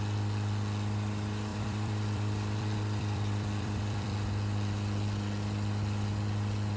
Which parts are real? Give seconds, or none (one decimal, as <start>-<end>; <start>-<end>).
0.0-1.5; 4.3-6.8